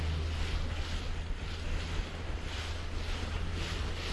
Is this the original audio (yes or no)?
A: yes